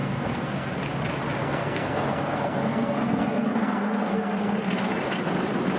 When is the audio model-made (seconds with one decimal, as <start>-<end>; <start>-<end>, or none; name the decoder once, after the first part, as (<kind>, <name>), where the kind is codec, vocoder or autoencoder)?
0.0-0.8 (codec, SNAC); 1.4-4.9